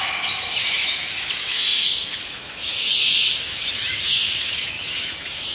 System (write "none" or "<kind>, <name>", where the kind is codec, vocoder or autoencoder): autoencoder, DAC-VAE